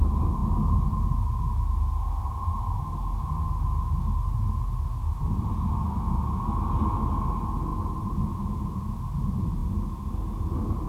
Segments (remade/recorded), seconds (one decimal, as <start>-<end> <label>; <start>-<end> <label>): 0.0-10.9 recorded